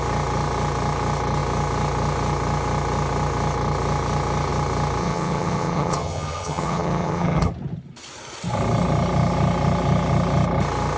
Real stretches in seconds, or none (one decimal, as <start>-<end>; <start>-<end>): 0.0-5.0; 7.5-11.0